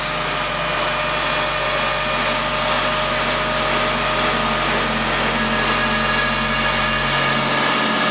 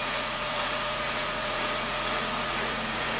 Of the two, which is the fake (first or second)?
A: second